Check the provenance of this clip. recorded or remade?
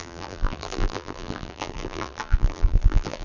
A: remade